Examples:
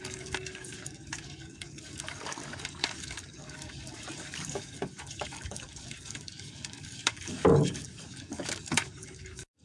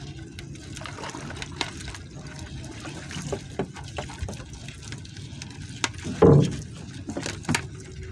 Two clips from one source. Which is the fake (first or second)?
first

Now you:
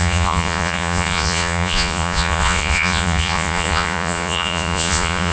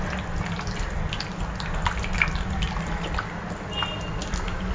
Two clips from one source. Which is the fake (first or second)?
first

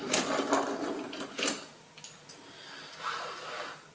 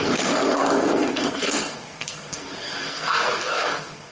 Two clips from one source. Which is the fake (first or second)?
second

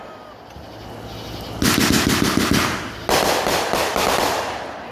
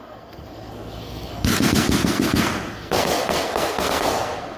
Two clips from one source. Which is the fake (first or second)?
second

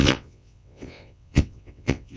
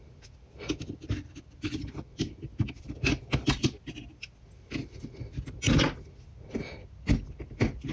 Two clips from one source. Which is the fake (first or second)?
first